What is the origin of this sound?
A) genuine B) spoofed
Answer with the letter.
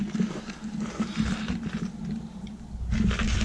A